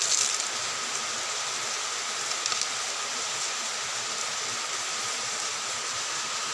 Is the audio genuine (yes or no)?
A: yes